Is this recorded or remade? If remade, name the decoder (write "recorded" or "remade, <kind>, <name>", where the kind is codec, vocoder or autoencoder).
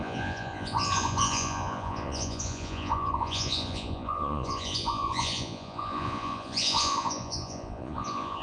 remade, vocoder, Vocos